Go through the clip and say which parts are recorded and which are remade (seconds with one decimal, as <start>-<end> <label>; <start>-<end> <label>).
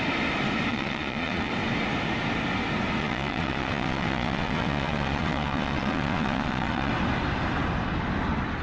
0.0-0.7 recorded; 0.7-1.5 remade; 1.5-3.0 recorded; 3.0-6.9 remade; 6.9-8.6 recorded